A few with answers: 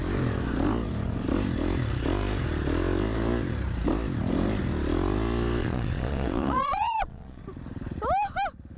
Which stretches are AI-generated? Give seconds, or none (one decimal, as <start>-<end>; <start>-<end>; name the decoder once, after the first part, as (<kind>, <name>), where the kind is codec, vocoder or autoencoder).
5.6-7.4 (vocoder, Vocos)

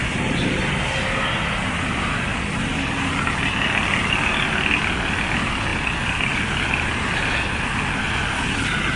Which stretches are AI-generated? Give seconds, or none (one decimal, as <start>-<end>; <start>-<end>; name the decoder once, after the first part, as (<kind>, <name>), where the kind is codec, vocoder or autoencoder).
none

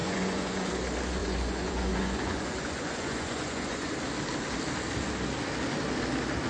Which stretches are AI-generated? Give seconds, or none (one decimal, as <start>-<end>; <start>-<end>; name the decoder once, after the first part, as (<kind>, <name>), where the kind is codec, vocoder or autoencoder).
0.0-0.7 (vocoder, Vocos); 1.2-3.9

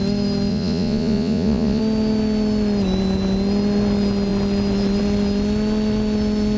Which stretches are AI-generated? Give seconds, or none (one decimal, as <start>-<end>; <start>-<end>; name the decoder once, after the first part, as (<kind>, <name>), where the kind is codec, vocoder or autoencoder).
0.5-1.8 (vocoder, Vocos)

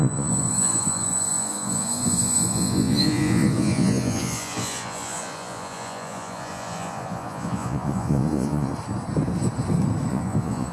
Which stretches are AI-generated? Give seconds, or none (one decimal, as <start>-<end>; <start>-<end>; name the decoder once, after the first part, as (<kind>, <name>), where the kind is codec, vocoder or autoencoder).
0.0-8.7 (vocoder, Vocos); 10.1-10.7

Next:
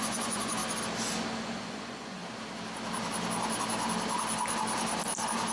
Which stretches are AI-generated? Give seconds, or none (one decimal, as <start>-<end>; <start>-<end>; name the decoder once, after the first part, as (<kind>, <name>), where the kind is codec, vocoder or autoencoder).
0.0-0.6 (vocoder, Vocos); 1.3-2.2

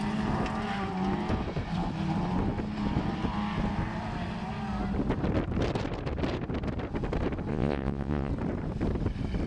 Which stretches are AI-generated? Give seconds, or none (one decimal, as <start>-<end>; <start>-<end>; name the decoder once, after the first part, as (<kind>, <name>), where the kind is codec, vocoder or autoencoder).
7.5-8.3 (vocoder, Vocos)